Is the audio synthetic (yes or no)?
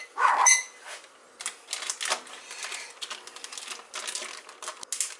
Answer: no